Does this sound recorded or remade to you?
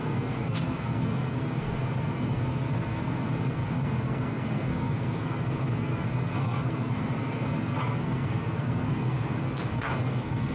remade